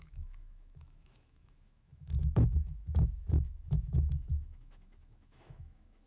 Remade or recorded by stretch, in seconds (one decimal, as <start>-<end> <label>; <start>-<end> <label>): 0.0-6.1 remade